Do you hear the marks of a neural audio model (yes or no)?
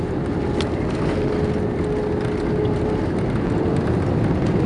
no